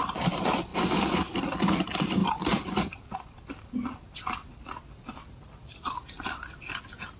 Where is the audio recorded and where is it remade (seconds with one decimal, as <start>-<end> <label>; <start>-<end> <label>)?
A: 0.0-0.7 recorded; 0.7-1.4 remade; 1.4-2.2 recorded; 2.2-3.6 remade; 3.6-5.6 recorded; 5.6-7.2 remade